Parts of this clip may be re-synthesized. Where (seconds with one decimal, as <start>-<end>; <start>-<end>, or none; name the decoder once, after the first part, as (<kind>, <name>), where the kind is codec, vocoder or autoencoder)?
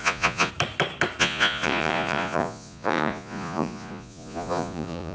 0.0-0.5 (vocoder, Vocos); 1.2-5.1